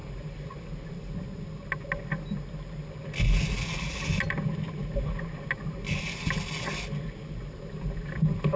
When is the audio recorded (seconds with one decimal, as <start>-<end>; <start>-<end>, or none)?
0.0-8.6